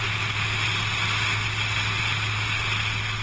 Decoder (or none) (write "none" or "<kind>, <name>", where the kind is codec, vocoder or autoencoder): none